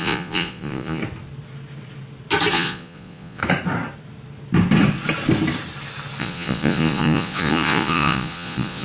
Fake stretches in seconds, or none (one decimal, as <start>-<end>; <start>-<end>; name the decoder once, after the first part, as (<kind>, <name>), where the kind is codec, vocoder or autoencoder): 0.0-1.0 (vocoder, Vocos); 2.5-3.4; 6.2-8.8